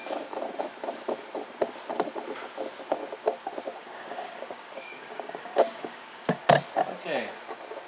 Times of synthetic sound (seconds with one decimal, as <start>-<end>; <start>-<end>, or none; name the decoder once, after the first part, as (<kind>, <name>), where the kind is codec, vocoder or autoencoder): 3.8-6.4 (codec, DAC)